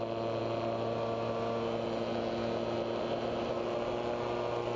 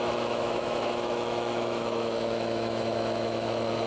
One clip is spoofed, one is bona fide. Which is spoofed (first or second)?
second